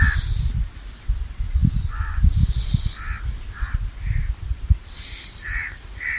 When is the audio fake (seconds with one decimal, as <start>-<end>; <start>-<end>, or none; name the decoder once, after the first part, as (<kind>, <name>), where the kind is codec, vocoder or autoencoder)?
none

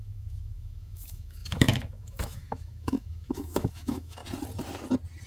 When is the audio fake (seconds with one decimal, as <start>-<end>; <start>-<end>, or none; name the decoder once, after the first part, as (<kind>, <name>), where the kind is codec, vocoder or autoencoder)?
0.0-4.2 (autoencoder, DAC-VAE)

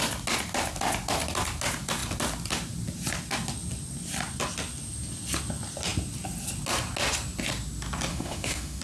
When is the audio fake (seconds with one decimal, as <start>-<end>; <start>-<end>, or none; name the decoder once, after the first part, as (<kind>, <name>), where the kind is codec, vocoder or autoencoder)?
8.1-8.8 (autoencoder, DAC-VAE)

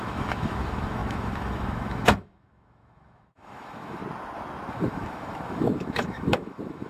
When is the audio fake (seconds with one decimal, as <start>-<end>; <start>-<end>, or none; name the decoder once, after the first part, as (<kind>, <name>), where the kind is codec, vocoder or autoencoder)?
0.0-4.0 (autoencoder, DAC-VAE); 4.7-6.9